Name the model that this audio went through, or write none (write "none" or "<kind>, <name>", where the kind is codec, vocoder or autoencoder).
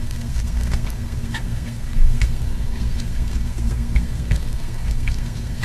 codec, SNAC